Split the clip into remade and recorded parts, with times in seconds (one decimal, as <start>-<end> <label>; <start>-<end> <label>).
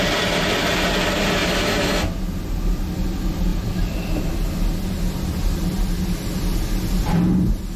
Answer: 0.0-3.5 recorded; 3.5-4.1 remade; 4.1-5.4 recorded; 5.4-7.2 remade; 7.2-7.8 recorded